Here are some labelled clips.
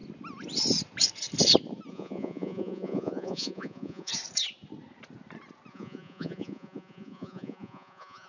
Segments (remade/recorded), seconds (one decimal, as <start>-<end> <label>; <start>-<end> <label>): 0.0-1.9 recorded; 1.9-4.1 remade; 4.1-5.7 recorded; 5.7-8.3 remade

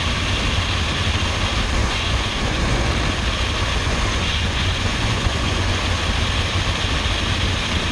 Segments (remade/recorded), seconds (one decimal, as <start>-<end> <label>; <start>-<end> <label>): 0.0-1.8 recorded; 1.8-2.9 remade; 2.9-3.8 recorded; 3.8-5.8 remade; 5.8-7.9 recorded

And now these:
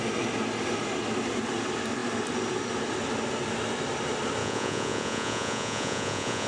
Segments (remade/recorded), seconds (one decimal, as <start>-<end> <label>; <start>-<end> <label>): 0.0-4.4 recorded; 4.4-6.5 remade

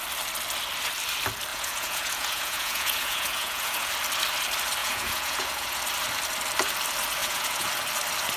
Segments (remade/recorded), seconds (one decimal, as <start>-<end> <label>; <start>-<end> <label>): 0.0-1.5 recorded; 1.5-3.9 remade; 3.9-4.8 recorded; 4.8-5.8 remade; 5.8-7.2 recorded; 7.2-7.7 remade; 7.7-8.4 recorded